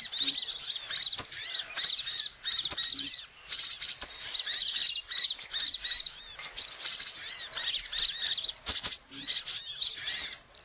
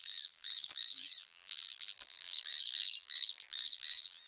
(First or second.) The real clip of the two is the first